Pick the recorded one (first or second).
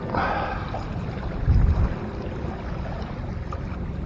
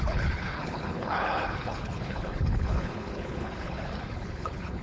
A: first